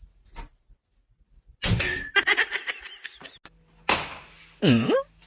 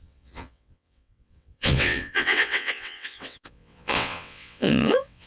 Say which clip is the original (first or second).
first